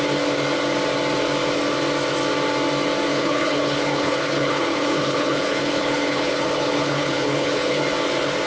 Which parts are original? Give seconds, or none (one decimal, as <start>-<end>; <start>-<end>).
0.0-3.1; 7.8-8.5